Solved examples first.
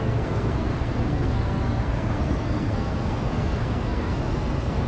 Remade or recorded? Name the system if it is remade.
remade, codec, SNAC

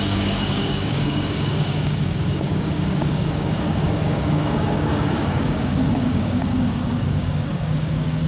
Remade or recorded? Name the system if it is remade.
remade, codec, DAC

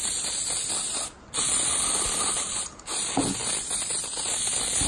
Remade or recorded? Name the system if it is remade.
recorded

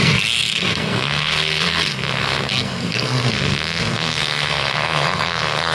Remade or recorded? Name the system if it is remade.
remade, codec, SNAC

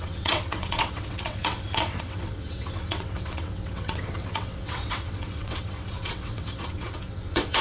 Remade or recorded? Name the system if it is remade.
remade, vocoder, WaveNeXt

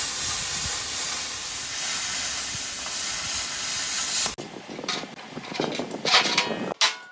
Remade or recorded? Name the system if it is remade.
recorded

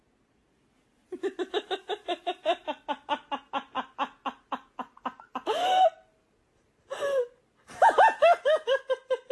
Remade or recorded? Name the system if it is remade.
recorded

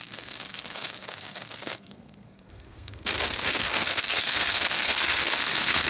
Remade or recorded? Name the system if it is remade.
remade, codec, SNAC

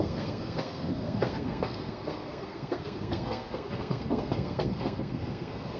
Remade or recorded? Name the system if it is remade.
remade, codec, SNAC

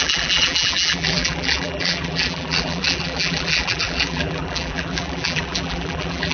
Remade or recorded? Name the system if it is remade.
remade, vocoder, BigVGAN v2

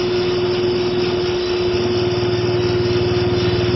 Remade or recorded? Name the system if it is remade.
recorded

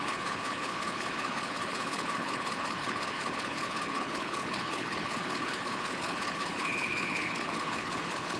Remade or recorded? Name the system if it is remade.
remade, codec, HILCodec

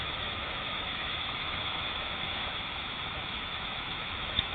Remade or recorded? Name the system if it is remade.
remade, autoencoder, DAC-VAE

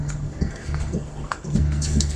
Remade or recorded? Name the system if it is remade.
remade, codec, SNAC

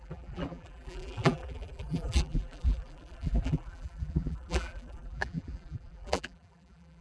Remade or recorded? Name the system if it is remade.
remade, vocoder, BigVGAN v2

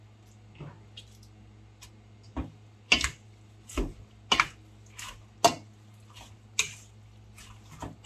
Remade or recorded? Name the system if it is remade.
recorded